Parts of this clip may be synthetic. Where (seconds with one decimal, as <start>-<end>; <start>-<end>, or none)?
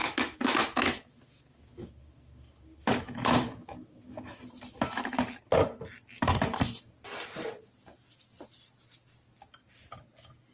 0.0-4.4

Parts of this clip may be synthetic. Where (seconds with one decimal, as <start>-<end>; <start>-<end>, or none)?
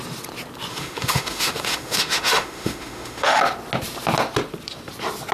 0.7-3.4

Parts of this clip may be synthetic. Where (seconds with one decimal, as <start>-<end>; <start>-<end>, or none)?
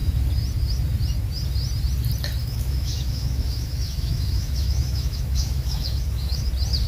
2.4-6.5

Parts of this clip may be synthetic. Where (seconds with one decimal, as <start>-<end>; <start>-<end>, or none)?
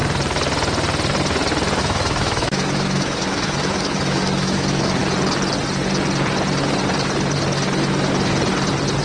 1.8-5.0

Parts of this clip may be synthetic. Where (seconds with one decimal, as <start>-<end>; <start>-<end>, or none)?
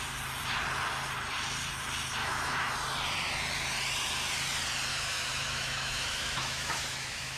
2.2-2.7; 4.9-7.4